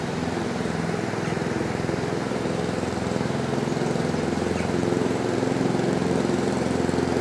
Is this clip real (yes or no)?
no